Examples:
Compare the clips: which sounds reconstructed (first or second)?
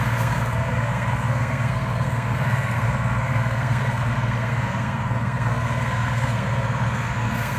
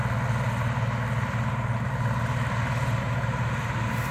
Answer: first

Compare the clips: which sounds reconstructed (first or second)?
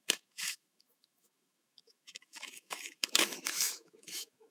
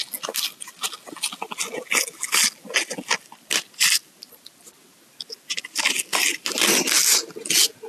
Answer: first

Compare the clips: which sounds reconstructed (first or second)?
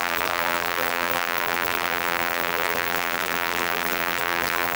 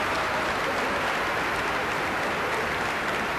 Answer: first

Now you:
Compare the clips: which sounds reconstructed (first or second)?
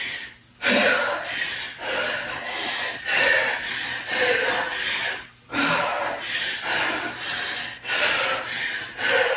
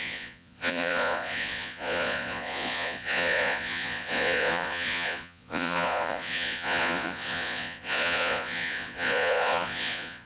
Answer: second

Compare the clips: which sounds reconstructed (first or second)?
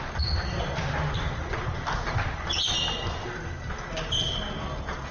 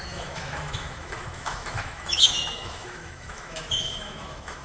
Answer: second